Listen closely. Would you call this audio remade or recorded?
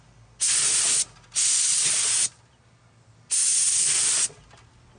recorded